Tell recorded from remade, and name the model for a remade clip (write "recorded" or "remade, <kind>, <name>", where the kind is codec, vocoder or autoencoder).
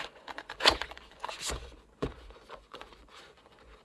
remade, vocoder, Vocos